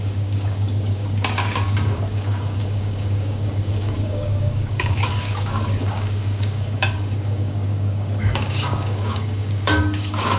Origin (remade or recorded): remade